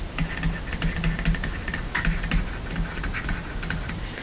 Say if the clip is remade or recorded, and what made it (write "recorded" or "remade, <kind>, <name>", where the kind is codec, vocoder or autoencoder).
recorded